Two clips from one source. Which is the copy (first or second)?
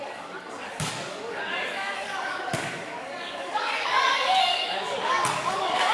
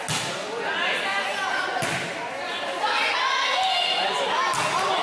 first